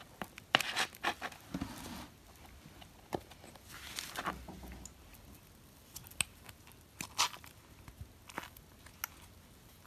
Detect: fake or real real